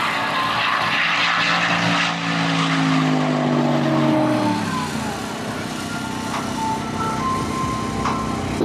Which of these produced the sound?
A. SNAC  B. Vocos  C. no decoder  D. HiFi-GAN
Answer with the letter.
C